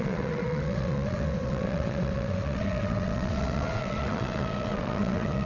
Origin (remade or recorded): remade